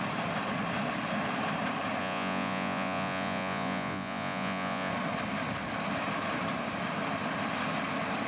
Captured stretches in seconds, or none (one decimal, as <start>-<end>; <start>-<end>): 0.0-2.0; 4.9-8.3